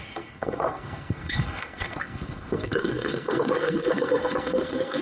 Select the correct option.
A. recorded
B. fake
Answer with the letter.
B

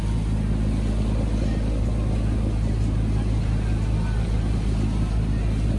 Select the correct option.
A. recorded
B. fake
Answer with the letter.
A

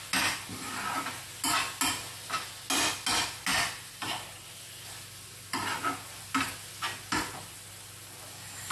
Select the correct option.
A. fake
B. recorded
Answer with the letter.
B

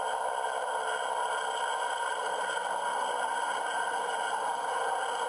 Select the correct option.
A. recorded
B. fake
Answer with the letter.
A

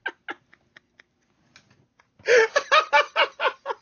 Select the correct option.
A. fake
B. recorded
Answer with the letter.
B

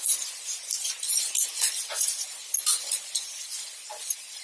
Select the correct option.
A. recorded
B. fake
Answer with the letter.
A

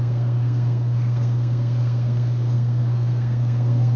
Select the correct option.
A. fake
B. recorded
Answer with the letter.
A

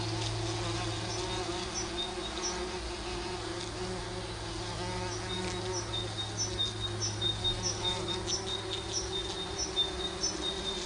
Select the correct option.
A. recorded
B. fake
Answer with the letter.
A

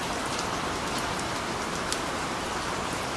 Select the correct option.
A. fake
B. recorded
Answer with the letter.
B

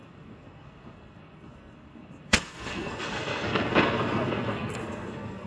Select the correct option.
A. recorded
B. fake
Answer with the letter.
B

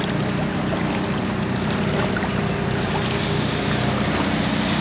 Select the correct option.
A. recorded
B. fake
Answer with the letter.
A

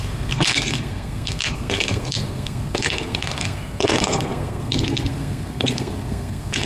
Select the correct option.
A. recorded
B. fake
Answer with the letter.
B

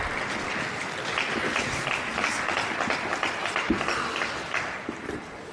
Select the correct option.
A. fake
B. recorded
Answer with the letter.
B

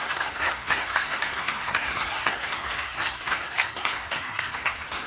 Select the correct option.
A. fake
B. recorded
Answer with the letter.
A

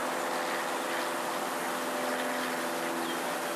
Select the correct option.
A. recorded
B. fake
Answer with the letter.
A